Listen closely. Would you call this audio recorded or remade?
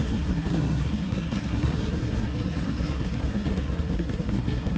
remade